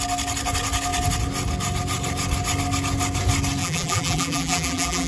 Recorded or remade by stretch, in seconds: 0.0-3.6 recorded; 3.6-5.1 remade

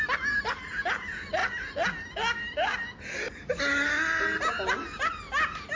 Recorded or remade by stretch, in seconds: 0.0-5.8 recorded

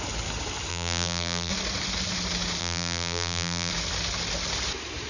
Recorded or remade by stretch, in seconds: 0.0-0.7 recorded; 0.7-1.5 remade; 1.5-2.6 recorded; 2.6-3.7 remade; 3.7-5.1 recorded

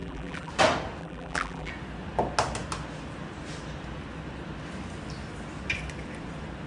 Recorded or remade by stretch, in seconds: 0.0-0.5 remade; 0.5-1.0 recorded; 1.0-1.7 remade; 1.7-6.7 recorded

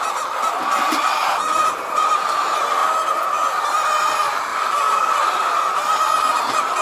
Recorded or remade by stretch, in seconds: 0.0-4.5 recorded; 4.5-5.4 remade; 5.4-6.8 recorded

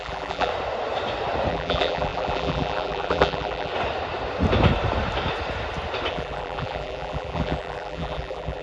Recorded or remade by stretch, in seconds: 0.0-0.5 remade; 0.5-1.5 recorded; 1.5-3.7 remade; 3.7-6.1 recorded; 6.1-8.6 remade